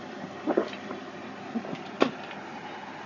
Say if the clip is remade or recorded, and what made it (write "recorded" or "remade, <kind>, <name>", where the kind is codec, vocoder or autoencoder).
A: recorded